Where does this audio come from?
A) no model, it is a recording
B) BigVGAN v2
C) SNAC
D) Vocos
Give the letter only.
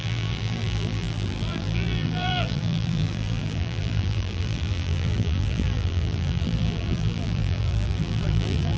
B